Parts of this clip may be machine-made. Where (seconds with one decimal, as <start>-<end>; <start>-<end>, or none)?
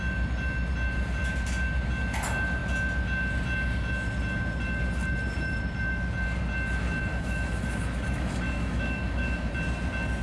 7.1-9.5